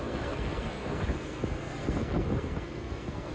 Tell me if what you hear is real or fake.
fake